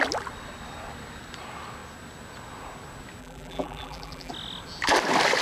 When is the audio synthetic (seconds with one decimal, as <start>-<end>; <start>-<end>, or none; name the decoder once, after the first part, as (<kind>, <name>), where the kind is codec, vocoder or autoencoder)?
3.2-4.3 (vocoder, BigVGAN v2)